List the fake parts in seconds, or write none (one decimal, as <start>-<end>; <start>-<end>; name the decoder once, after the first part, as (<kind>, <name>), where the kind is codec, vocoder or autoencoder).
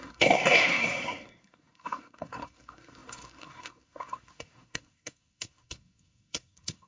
0.0-6.9 (codec, SNAC)